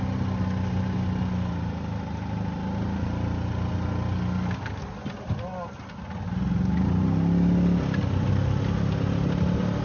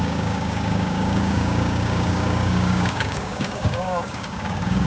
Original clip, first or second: first